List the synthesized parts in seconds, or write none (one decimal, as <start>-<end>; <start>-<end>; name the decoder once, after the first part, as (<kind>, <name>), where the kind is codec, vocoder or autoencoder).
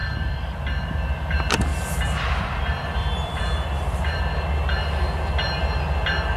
3.0-4.2 (vocoder, BigVGAN v2)